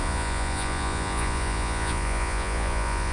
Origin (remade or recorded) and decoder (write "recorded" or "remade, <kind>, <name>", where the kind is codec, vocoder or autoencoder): remade, vocoder, Vocos